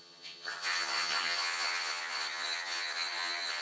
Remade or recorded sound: remade